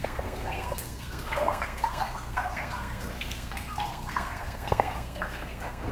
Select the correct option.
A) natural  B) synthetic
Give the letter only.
B